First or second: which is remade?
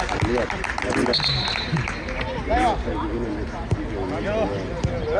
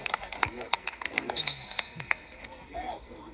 second